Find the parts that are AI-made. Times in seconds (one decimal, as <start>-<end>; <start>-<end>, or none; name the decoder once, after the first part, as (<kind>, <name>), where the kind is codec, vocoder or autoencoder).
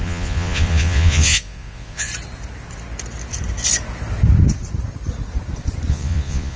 0.0-2.1 (vocoder, Vocos); 5.9-6.6